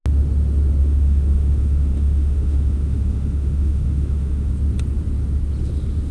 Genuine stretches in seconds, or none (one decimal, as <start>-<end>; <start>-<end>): 0.0-0.8; 4.5-6.1